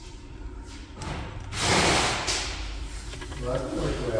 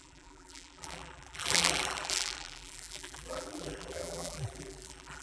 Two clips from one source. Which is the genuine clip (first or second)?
first